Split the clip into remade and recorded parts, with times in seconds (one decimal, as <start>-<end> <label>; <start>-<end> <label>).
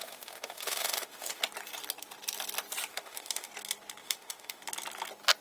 0.0-1.4 remade; 1.4-2.9 recorded; 2.9-3.5 remade; 3.5-4.0 recorded; 4.0-4.6 remade; 4.6-5.4 recorded